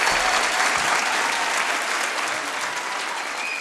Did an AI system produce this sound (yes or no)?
no